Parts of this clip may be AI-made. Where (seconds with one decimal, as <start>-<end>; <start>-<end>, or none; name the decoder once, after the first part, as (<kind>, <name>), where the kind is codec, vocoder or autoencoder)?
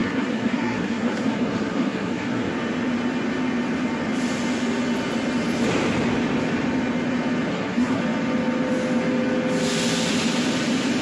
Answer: 0.0-2.5 (codec, SNAC); 7.5-8.0